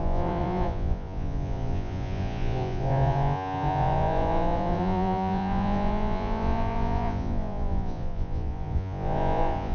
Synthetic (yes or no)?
yes